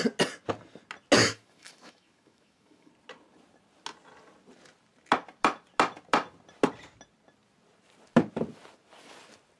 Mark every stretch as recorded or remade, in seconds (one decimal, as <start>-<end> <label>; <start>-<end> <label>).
0.0-1.2 recorded; 1.2-2.9 remade; 2.9-9.6 recorded